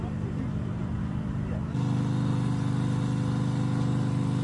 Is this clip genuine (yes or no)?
yes